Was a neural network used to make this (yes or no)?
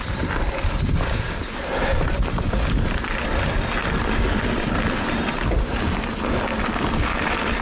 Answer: no